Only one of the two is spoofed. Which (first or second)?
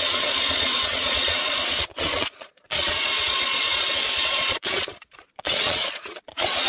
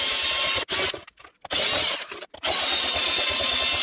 first